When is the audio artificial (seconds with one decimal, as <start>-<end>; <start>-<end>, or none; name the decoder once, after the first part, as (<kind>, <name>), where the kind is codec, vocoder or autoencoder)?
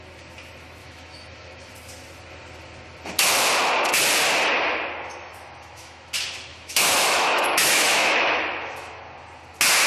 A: 0.8-1.7 (autoencoder, DAC-VAE); 5.2-6.1; 6.5-9.0